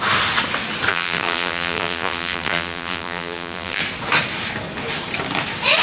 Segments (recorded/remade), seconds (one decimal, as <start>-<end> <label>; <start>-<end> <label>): 0.0-0.9 recorded; 0.9-3.8 remade; 3.8-5.8 recorded